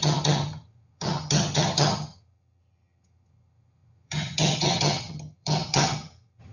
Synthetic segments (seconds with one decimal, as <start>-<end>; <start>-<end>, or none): 0.0-6.5